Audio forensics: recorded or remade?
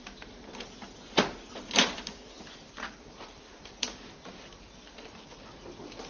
recorded